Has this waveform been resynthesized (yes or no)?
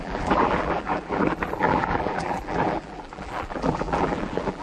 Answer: yes